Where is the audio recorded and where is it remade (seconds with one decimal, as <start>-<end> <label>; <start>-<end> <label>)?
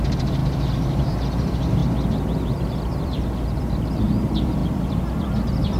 0.0-0.4 remade; 0.4-1.0 recorded; 1.0-1.8 remade; 1.8-3.0 recorded; 3.0-5.8 remade